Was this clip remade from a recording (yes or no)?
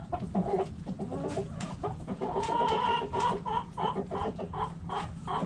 yes